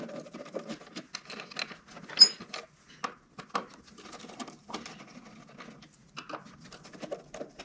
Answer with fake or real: real